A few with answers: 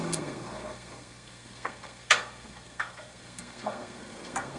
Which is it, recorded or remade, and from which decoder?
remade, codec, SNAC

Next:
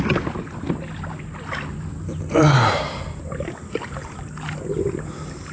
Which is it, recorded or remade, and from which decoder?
recorded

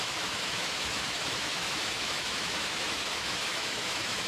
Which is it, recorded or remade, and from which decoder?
remade, autoencoder, DAC-VAE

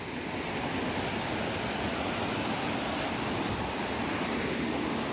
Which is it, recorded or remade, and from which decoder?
recorded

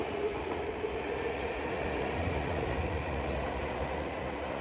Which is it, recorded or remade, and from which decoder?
remade, vocoder, Vocos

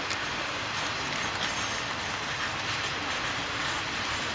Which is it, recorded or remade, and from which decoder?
recorded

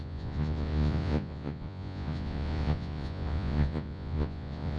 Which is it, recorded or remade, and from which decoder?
remade, vocoder, Vocos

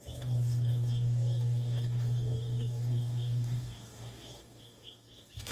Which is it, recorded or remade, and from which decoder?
remade, codec, DAC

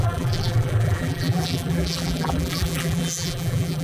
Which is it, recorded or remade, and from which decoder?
remade, vocoder, BigVGAN v2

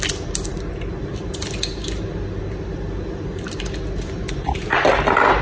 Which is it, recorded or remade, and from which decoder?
recorded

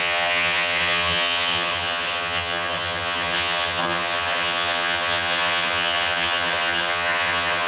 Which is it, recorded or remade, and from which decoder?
remade, vocoder, HiFi-GAN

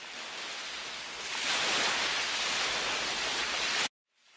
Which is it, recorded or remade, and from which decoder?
recorded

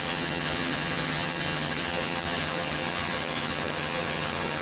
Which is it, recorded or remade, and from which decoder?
remade, vocoder, HiFi-GAN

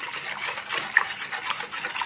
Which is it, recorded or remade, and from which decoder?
recorded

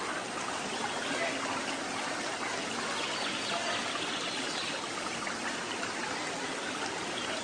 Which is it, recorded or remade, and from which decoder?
recorded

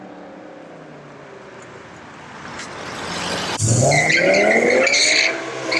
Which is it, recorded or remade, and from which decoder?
recorded